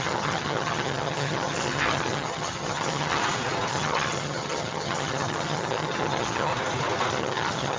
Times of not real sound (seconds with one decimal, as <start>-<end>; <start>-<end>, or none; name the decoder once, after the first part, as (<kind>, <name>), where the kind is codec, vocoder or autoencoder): 0.0-3.2 (vocoder, HiFi-GAN); 3.7-6.5; 7.1-7.8